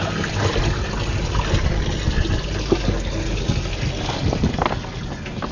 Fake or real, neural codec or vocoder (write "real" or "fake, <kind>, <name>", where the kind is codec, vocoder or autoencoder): real